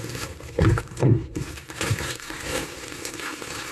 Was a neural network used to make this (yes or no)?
yes